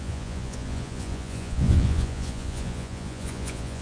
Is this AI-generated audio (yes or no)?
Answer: yes